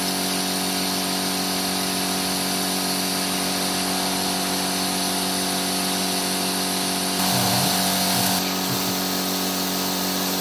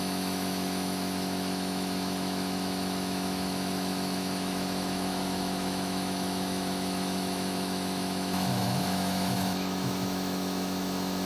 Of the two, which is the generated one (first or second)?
second